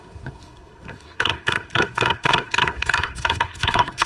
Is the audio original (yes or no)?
no